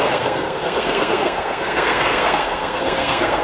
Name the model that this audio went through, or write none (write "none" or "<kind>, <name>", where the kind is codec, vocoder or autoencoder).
codec, SNAC